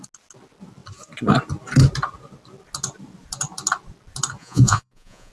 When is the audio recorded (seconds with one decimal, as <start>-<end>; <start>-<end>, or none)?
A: 0.0-4.4